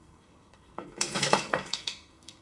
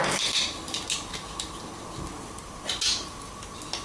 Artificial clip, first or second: first